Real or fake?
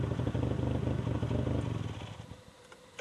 real